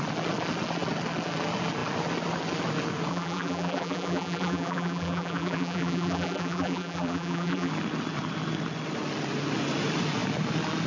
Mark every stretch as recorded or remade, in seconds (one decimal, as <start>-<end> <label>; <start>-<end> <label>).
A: 0.0-3.1 recorded; 3.1-7.7 remade; 7.7-10.9 recorded